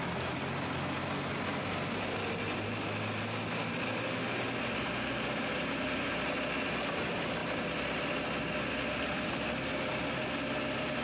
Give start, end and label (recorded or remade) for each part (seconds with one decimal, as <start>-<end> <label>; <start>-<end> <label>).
0.0-11.0 recorded